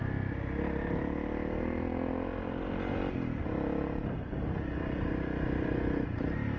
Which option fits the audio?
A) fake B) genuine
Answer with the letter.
B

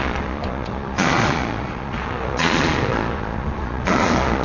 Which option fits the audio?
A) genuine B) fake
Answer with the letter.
B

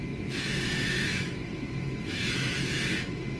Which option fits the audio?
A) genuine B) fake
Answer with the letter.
B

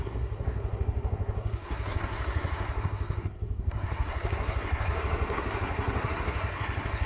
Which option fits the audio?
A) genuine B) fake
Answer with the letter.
B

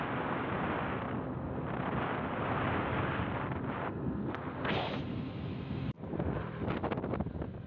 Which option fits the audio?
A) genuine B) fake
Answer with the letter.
A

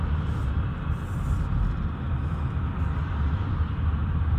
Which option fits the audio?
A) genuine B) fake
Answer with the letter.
A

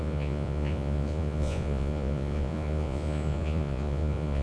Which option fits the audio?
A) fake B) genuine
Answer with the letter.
A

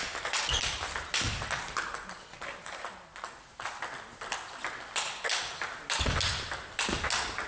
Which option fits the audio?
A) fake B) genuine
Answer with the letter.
B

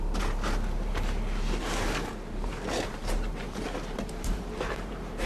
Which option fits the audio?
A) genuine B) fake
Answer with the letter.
B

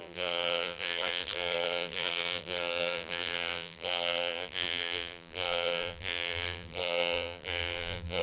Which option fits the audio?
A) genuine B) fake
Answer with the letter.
B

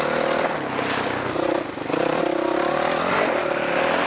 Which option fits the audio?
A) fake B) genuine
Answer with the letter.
B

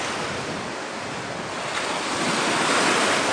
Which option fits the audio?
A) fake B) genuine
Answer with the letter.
B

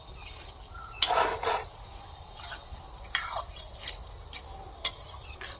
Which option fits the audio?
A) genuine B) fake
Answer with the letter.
A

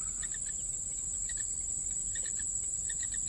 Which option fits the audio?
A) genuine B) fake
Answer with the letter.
A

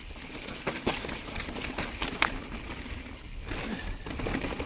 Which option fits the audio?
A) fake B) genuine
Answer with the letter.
B